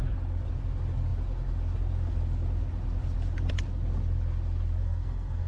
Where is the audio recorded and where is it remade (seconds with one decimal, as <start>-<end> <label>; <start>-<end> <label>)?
0.0-4.8 recorded; 4.8-5.5 remade

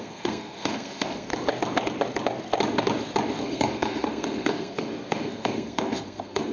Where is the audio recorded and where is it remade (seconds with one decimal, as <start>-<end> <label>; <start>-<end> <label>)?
0.0-1.3 remade; 1.3-3.4 recorded; 3.4-6.5 remade

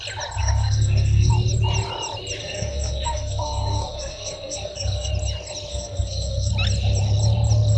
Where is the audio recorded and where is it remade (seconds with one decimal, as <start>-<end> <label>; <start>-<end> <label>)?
0.0-0.4 recorded; 0.4-1.3 remade; 1.3-2.4 recorded; 2.4-5.1 remade; 5.1-5.7 recorded; 5.7-6.5 remade; 6.5-7.8 recorded